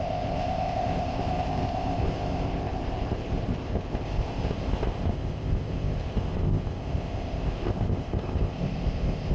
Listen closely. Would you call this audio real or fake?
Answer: fake